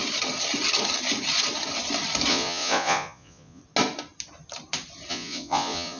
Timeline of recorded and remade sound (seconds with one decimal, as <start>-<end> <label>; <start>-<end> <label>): 0.0-2.3 recorded; 2.3-3.6 remade; 3.6-5.1 recorded; 5.1-6.0 remade